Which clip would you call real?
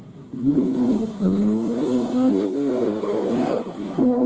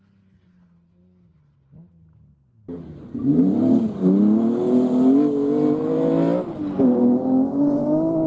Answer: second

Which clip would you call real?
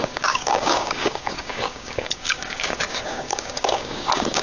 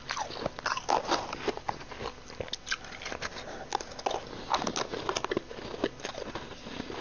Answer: second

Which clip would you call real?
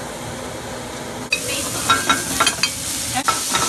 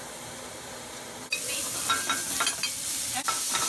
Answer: first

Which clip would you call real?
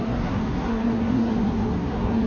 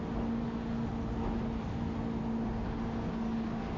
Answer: second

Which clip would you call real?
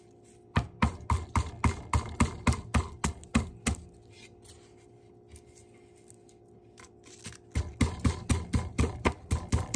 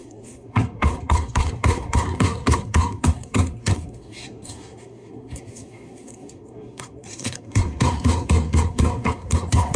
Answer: first